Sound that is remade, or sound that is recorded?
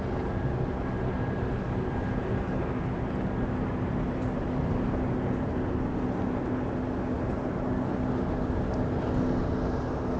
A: recorded